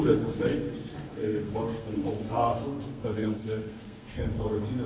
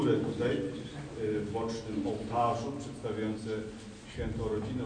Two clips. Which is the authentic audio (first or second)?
second